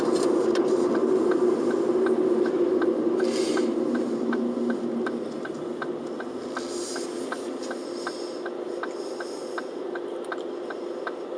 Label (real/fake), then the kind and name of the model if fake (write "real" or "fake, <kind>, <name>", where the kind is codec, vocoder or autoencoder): real